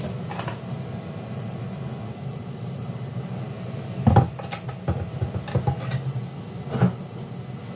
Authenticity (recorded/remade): recorded